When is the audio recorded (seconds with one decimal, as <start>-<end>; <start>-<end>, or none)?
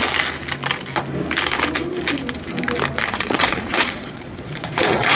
0.0-3.1